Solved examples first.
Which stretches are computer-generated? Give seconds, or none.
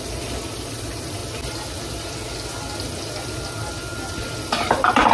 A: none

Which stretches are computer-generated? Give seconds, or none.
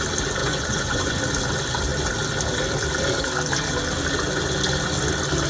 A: 0.4-1.2 (vocoder, Vocos)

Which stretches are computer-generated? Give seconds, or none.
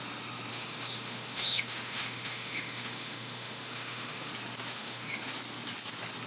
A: 0.5-4.3 (autoencoder, DAC-VAE); 4.7-5.3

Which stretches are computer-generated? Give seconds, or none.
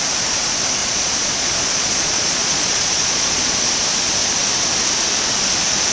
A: 0.8-3.6 (vocoder, Vocos)